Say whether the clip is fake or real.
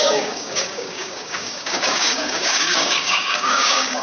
fake